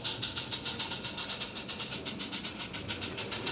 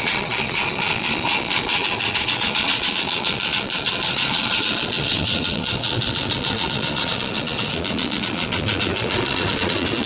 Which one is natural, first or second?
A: first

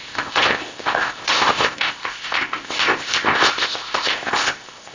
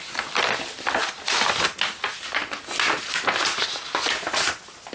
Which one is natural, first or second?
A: second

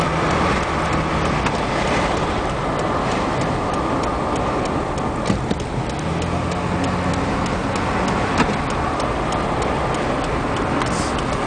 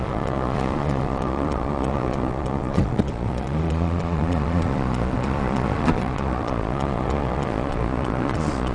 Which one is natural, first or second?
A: first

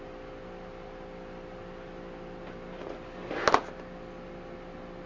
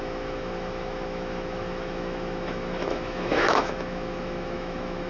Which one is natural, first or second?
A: first